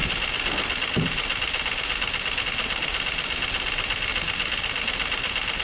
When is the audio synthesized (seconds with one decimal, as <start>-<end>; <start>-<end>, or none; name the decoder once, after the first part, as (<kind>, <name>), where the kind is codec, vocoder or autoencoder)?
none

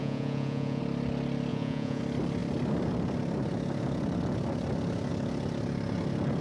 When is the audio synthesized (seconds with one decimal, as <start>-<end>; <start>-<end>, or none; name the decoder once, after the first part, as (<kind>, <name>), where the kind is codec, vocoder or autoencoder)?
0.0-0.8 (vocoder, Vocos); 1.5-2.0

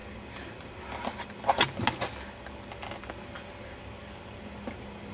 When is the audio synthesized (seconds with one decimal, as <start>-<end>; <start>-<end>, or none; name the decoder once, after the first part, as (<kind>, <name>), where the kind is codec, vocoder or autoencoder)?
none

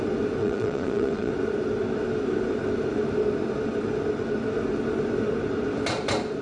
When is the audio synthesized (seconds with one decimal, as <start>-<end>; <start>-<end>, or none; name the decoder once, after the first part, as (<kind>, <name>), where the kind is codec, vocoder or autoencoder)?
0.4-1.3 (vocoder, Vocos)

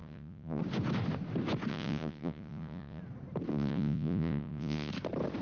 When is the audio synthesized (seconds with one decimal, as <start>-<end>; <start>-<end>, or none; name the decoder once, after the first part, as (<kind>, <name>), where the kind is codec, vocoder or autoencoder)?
0.0-0.6 (vocoder, Vocos); 1.7-3.0; 3.5-4.9